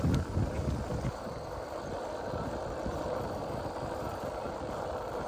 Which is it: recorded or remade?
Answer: recorded